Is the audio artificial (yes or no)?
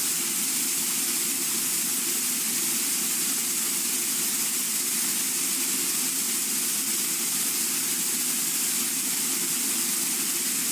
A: no